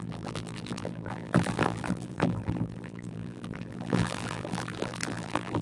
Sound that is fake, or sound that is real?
fake